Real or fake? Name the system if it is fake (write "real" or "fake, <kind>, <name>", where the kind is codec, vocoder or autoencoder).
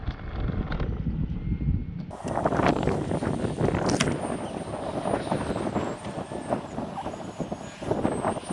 real